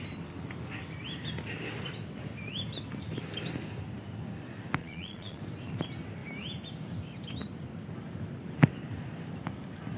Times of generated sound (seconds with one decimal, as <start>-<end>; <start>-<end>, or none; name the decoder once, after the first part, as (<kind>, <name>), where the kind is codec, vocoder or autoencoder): 4.8-5.4 (vocoder, Vocos)

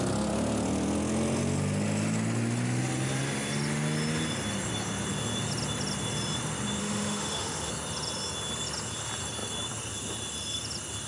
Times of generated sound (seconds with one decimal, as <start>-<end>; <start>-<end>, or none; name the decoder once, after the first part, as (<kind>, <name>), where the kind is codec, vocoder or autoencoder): 6.8-7.7 (autoencoder, DAC-VAE)

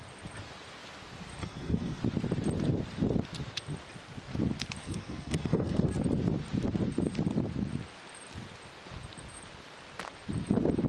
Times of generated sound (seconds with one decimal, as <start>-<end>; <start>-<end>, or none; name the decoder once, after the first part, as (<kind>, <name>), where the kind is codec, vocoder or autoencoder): 1.4-2.0 (codec, SNAC); 4.8-5.9

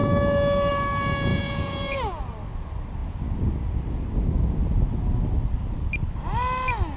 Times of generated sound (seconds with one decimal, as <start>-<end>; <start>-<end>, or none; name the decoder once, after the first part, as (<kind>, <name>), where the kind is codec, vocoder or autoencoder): 1.3-2.2 (vocoder, Vocos)